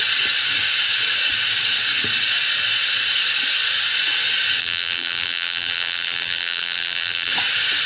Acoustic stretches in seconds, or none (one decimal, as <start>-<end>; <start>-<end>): 0.0-4.6; 7.3-7.9